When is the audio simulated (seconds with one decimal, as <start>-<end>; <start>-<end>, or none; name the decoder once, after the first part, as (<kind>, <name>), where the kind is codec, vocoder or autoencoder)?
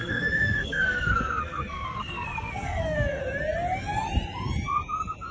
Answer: 0.0-3.2 (codec, SNAC)